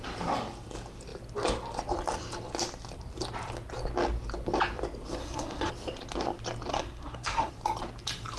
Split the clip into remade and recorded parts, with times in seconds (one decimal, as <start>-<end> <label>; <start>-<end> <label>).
0.0-5.2 recorded; 5.2-5.7 remade; 5.7-6.7 recorded; 6.7-7.5 remade; 7.5-8.4 recorded